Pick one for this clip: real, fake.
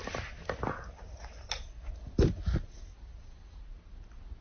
real